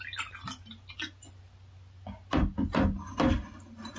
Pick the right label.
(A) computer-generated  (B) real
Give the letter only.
B